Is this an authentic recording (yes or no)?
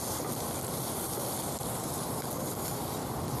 no